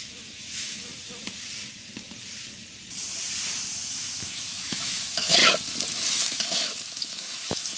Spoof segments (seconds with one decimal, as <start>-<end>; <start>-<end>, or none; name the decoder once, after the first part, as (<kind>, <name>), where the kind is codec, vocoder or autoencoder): 0.0-0.9 (autoencoder, DAC-VAE); 3.9-5.4; 6.1-7.8